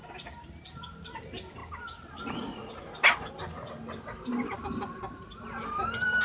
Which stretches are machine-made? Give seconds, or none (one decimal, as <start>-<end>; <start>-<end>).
none

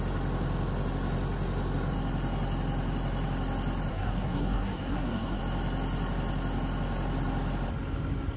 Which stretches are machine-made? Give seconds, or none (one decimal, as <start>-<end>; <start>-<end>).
3.9-5.4

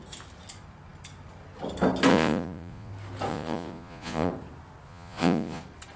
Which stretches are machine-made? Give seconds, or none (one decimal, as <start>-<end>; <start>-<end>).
2.1-2.9; 3.3-4.3; 4.9-5.6

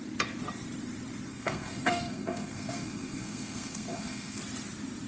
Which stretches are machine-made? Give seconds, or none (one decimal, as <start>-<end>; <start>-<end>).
1.3-4.4

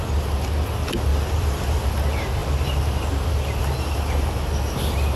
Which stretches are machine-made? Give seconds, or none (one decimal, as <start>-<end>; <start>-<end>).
1.1-1.9; 2.4-3.3

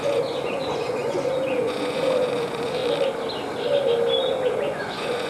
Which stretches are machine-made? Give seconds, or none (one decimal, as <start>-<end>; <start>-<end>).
0.0-2.8; 4.2-5.3

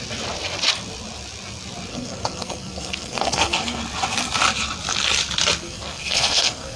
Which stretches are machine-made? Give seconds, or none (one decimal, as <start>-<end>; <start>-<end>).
1.9-3.8; 5.6-6.8

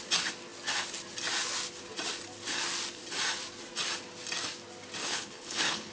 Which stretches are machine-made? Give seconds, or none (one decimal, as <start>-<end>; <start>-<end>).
5.0-5.9